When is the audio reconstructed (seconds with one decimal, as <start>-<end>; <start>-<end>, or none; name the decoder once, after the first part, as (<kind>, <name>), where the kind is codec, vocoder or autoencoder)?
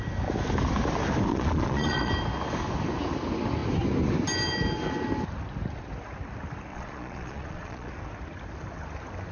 1.3-2.1 (vocoder, Vocos); 6.7-7.9